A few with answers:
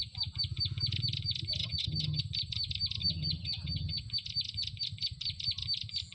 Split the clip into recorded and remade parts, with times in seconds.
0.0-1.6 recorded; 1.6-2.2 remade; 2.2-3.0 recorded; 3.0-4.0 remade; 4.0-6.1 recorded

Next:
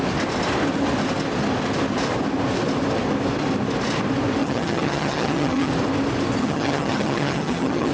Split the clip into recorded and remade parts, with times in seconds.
0.0-4.4 recorded; 4.4-5.7 remade; 5.7-6.4 recorded; 6.4-7.9 remade

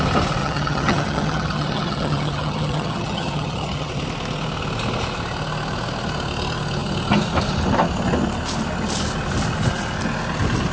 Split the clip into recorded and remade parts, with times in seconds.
0.0-0.4 recorded; 0.4-3.9 remade; 3.9-10.7 recorded

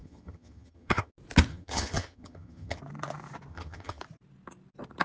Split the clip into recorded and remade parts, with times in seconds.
0.0-1.1 remade; 1.1-1.5 recorded; 1.5-2.8 remade; 2.8-3.5 recorded; 3.5-4.0 remade; 4.0-5.0 recorded

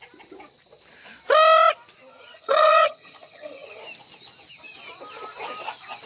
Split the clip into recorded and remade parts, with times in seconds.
0.0-2.1 recorded; 2.1-3.8 remade; 3.8-6.1 recorded

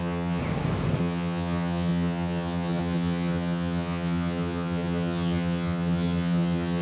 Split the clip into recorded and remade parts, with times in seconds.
0.0-0.4 remade; 0.4-1.0 recorded; 1.0-6.8 remade

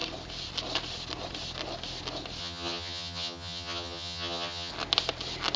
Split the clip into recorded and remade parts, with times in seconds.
0.0-2.4 recorded; 2.4-4.7 remade; 4.7-5.6 recorded